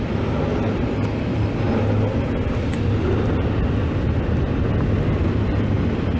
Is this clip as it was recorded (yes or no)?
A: yes